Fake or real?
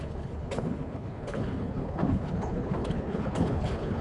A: fake